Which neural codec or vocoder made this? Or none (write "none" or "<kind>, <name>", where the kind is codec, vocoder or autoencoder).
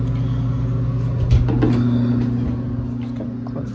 none